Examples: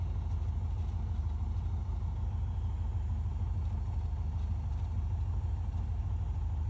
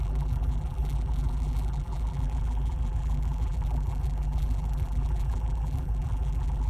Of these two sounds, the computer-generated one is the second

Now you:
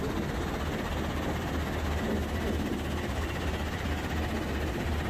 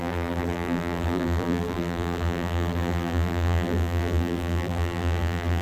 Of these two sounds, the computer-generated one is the second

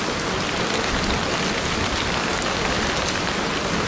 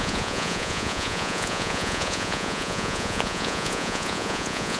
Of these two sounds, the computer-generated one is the second